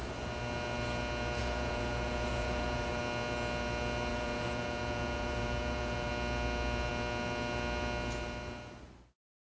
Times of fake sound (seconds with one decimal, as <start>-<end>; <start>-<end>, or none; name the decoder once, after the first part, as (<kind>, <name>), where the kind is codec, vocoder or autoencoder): 1.4-3.0 (vocoder, Vocos); 4.1-6.1